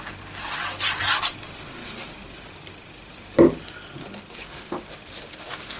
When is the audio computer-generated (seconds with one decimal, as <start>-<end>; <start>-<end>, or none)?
1.8-5.3